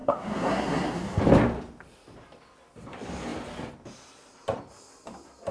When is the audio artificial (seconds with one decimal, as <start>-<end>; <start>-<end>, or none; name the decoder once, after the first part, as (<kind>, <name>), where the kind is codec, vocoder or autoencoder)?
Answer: 0.0-1.2 (codec, SNAC)

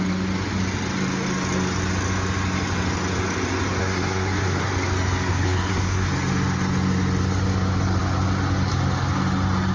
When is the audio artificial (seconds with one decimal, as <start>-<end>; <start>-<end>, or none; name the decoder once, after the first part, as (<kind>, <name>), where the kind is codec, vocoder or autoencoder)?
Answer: 3.8-4.7 (codec, SNAC); 5.3-6.1

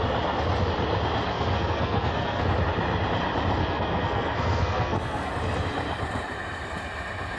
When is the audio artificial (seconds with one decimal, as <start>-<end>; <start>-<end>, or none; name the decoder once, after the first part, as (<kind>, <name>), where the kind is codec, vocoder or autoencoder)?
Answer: 1.3-2.4 (codec, SNAC); 3.6-5.3

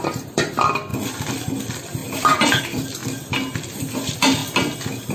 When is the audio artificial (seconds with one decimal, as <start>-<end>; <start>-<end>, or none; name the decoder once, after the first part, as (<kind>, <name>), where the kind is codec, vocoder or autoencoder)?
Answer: 0.0-0.9 (vocoder, BigVGAN v2); 1.5-3.0; 3.5-4.4

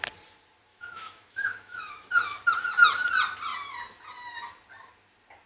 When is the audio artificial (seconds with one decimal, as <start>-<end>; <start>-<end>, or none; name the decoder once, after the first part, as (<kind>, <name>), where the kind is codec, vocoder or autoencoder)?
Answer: 0.7-2.1 (autoencoder, DAC-VAE)

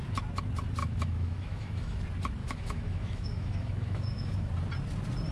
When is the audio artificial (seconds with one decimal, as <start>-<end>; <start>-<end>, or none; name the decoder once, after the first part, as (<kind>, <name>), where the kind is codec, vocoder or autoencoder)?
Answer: 0.8-2.0 (autoencoder, DAC-VAE); 2.4-4.5

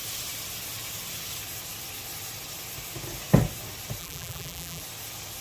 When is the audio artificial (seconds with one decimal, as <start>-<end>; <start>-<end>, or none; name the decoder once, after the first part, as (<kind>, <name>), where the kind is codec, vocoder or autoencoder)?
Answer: 4.0-4.8 (vocoder, BigVGAN v2)